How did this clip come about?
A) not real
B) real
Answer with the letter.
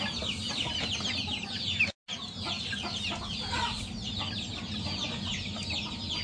B